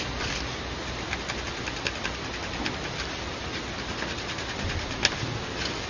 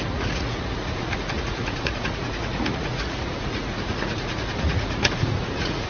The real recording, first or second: first